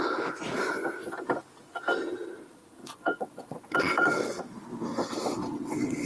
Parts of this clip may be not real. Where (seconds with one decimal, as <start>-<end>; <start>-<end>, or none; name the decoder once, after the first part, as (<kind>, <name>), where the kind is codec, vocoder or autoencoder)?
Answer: 2.8-4.4 (vocoder, WaveNeXt); 4.9-6.1